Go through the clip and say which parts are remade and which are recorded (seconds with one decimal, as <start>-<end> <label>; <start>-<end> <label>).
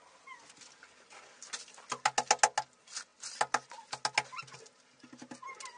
0.0-5.8 recorded